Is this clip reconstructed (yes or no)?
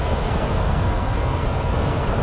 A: yes